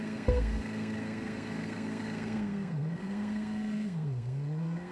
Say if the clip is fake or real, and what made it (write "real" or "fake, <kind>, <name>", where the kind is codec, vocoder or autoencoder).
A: fake, codec, SNAC